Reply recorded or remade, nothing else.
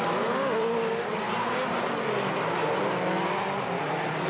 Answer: recorded